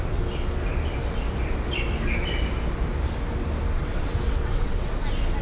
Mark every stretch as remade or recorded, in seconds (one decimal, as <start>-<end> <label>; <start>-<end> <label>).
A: 0.0-3.8 recorded; 3.8-4.9 remade; 4.9-5.4 recorded